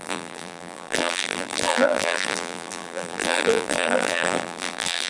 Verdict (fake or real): fake